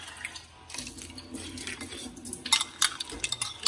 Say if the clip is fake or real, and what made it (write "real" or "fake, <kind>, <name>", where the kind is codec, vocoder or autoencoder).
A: real